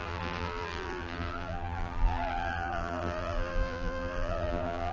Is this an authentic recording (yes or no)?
no